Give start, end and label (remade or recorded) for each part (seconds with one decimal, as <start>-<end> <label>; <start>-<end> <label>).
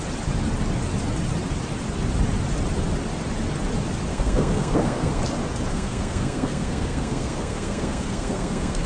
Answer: 0.0-4.1 recorded; 4.1-5.2 remade; 5.2-5.7 recorded; 5.7-8.9 remade